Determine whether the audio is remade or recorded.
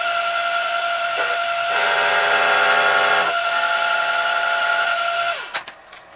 remade